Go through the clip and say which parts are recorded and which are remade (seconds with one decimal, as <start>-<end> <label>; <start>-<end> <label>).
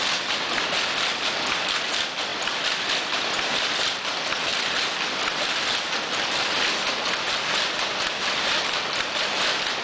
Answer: 0.0-9.8 remade